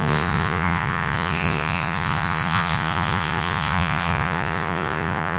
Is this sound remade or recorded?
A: remade